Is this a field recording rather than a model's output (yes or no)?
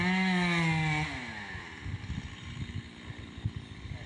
yes